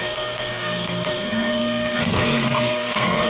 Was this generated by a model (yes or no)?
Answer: yes